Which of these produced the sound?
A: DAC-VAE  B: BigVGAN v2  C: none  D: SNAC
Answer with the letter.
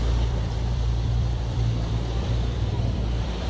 B